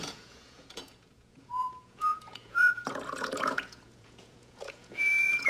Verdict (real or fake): fake